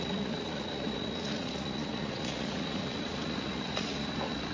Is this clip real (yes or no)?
no